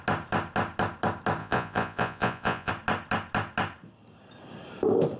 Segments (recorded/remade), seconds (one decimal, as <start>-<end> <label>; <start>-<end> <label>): 0.0-1.4 recorded; 1.4-2.7 remade; 2.7-5.2 recorded